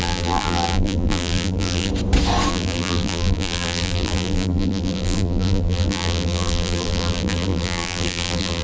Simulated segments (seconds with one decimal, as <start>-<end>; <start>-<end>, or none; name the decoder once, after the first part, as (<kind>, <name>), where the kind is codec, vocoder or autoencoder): 0.0-1.9 (vocoder, BigVGAN v2); 2.5-8.6